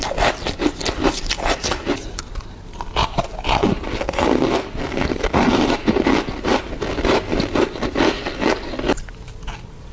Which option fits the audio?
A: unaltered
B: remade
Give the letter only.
A